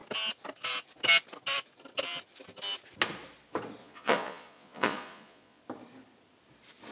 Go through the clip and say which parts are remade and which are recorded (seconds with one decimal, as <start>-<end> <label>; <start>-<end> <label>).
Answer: 0.0-3.8 recorded; 3.8-5.6 remade; 5.6-6.9 recorded